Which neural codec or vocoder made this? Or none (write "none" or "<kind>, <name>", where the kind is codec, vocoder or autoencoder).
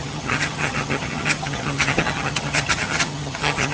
vocoder, HiFi-GAN